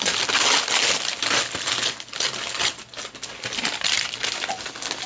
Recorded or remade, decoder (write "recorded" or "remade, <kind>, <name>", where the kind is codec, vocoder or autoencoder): recorded